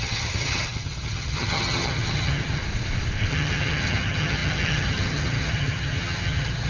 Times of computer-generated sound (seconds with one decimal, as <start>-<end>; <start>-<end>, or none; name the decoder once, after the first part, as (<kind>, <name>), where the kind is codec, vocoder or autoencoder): 0.0-2.6 (vocoder, HiFi-GAN); 3.3-6.7